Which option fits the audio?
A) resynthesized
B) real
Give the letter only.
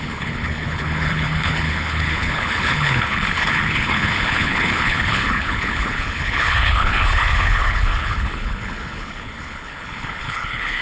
A